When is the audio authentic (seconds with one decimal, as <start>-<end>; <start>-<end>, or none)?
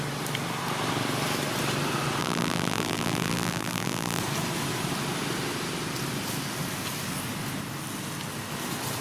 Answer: 0.0-2.2; 4.2-9.0